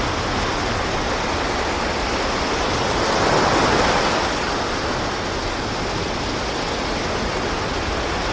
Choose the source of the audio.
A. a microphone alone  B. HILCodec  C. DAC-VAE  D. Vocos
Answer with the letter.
A